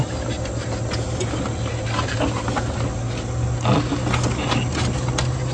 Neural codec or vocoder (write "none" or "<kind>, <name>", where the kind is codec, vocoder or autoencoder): none